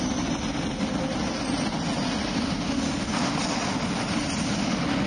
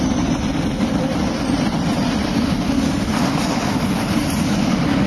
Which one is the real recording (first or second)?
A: first